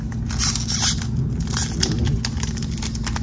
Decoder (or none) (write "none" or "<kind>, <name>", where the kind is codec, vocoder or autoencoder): none